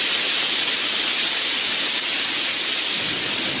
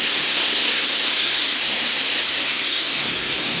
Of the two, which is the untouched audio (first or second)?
first